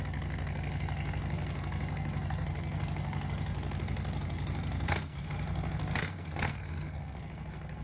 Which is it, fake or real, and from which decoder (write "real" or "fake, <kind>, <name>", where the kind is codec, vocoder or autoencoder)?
fake, codec, SNAC